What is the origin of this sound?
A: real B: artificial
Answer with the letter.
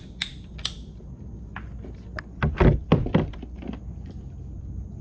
A